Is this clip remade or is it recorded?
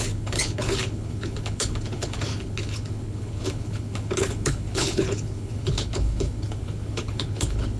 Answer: remade